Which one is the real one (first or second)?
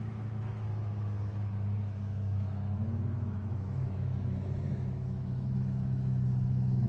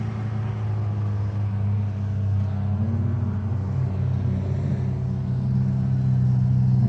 second